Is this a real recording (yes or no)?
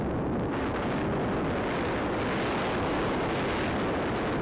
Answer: yes